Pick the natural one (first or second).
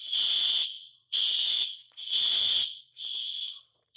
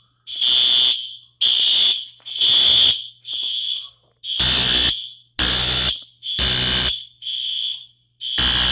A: second